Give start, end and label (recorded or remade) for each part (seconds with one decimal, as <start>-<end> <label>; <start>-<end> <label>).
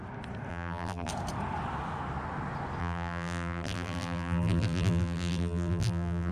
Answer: 0.0-0.5 recorded; 0.5-1.1 remade; 1.1-2.8 recorded; 2.8-6.3 remade